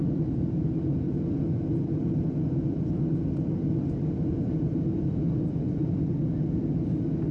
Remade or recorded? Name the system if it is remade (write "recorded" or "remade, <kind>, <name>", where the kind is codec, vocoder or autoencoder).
recorded